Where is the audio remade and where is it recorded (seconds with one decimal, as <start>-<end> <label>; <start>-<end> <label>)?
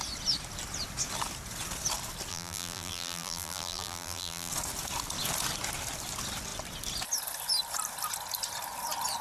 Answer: 0.0-2.3 recorded; 2.3-4.5 remade; 4.5-9.2 recorded